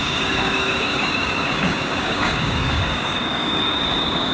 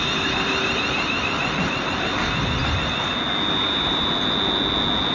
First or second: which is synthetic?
first